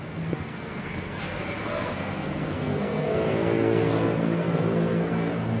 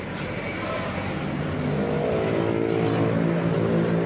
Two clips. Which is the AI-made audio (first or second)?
first